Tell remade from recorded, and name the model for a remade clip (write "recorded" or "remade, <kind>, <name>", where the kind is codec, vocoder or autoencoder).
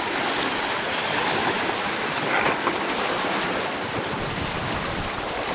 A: remade, vocoder, BigVGAN v2